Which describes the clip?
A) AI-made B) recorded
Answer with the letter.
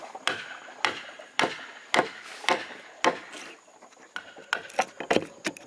B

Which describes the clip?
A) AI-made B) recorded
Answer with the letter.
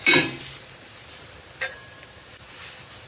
B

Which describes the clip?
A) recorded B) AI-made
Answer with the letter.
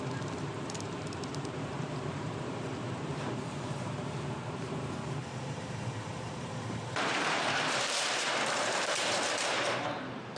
B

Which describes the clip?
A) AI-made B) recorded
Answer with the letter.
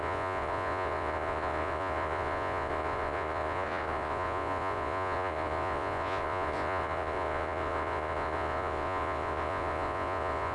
A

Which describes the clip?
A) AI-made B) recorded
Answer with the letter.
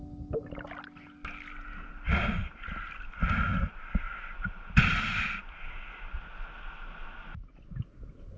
B